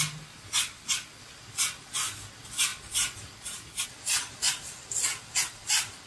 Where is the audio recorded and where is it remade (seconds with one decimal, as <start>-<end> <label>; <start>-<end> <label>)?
0.0-6.1 recorded